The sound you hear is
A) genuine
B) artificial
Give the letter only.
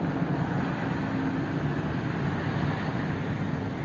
A